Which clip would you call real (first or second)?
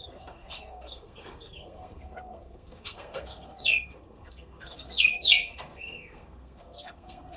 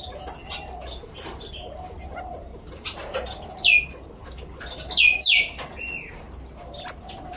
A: second